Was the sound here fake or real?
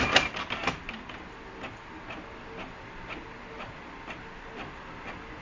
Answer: real